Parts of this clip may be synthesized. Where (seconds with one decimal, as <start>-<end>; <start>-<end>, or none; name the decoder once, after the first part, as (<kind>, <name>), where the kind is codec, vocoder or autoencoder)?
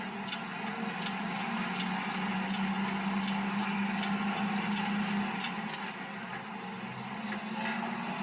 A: none